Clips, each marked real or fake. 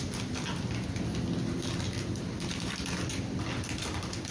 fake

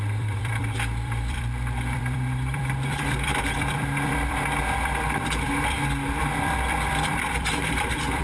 fake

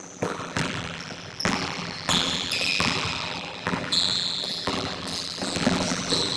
fake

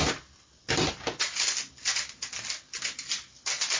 real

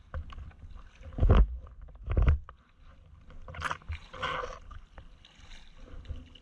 real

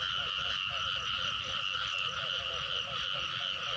real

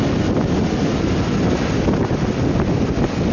real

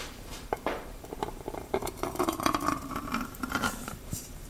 fake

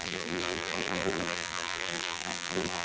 fake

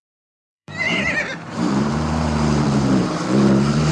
fake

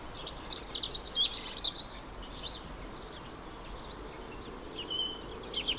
real